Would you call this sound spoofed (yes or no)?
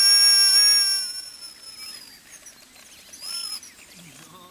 no